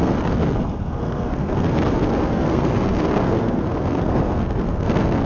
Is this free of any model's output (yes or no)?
no